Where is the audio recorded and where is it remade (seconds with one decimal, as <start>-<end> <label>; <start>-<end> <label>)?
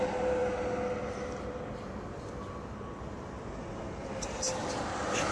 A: 0.0-5.3 recorded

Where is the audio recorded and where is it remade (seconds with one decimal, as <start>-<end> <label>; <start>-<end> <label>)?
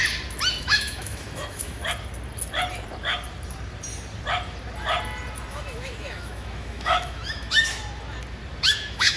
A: 0.0-0.6 recorded; 0.6-1.8 remade; 1.8-5.5 recorded; 5.5-7.8 remade; 7.8-8.6 recorded; 8.6-9.2 remade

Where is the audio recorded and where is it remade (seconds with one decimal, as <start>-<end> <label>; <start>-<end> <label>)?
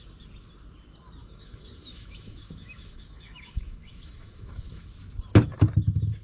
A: 0.0-1.2 recorded; 1.2-4.9 remade; 4.9-6.2 recorded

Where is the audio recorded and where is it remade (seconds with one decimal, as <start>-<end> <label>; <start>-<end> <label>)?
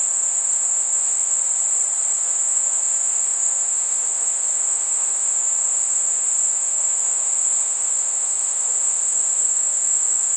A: 0.0-1.4 remade; 1.4-2.2 recorded; 2.2-10.4 remade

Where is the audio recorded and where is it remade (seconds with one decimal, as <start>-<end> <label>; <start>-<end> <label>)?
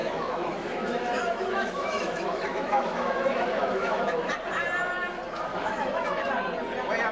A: 0.0-4.3 remade; 4.3-5.5 recorded; 5.5-6.3 remade; 6.3-7.1 recorded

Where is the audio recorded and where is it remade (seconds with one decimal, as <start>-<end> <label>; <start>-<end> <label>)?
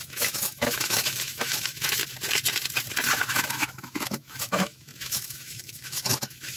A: 0.0-2.0 remade; 2.0-3.3 recorded; 3.3-6.6 remade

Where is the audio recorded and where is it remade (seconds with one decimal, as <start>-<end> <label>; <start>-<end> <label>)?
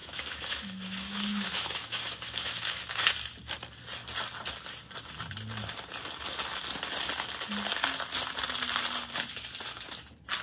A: 0.0-3.1 remade; 3.1-10.4 recorded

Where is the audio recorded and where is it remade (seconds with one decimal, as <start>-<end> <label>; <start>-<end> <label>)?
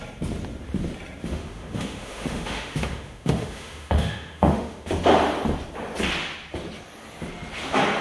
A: 0.0-1.3 recorded; 1.3-4.9 remade; 4.9-8.0 recorded